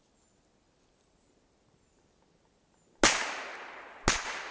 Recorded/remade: recorded